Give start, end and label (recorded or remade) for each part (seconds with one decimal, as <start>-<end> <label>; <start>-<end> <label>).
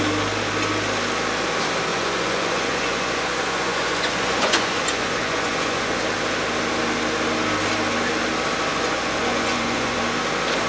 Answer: 0.0-1.9 recorded; 1.9-6.0 remade; 6.0-8.7 recorded; 8.7-10.0 remade; 10.0-10.7 recorded